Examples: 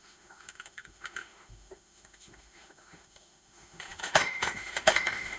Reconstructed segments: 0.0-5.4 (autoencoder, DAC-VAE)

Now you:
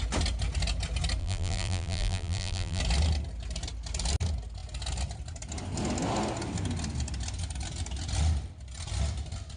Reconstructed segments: 1.2-2.8 (vocoder, BigVGAN v2)

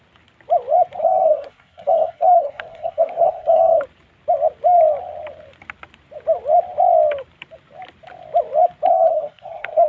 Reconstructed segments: 1.0-3.8 (codec, SNAC); 8.9-9.9

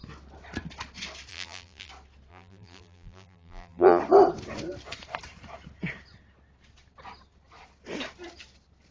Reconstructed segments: 1.3-1.9 (vocoder, BigVGAN v2); 2.3-4.0

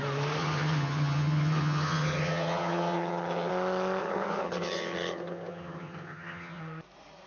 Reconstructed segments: 0.4-3.5 (vocoder, HiFi-GAN); 4.0-6.6

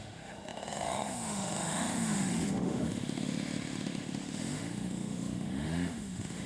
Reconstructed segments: 0.0-6.5 (autoencoder, DAC-VAE)